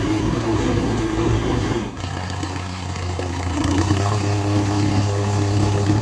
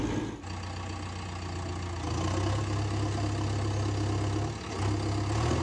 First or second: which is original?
second